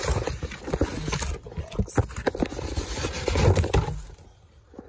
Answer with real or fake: real